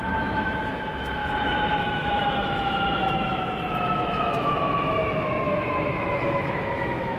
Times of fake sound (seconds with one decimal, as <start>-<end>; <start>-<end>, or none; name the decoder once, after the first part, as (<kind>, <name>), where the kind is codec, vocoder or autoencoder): 0.0-1.2 (autoencoder, DAC-VAE); 1.8-7.2